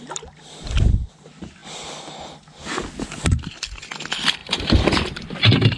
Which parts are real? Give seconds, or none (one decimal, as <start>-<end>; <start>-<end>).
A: 0.0-4.4